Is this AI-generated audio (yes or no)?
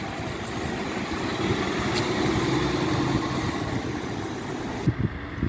no